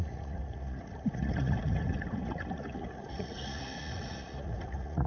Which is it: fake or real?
fake